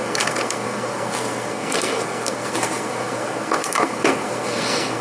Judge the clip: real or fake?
fake